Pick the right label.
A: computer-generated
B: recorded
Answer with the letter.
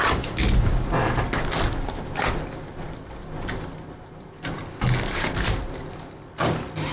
B